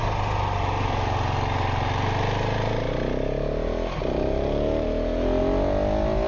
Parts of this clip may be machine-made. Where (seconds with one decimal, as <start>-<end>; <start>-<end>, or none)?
none